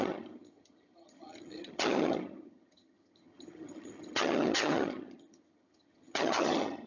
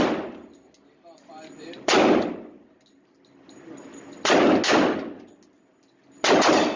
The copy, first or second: first